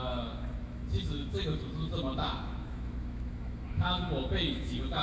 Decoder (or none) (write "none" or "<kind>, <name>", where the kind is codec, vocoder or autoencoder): autoencoder, DAC-VAE